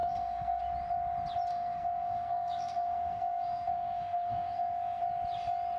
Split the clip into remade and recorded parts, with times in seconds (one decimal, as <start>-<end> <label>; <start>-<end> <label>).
0.0-0.6 remade; 0.6-1.5 recorded; 1.5-5.0 remade; 5.0-5.8 recorded